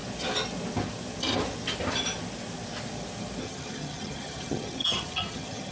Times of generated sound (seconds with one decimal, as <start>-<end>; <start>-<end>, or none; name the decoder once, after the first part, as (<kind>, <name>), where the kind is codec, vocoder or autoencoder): 3.4-5.7 (vocoder, HiFi-GAN)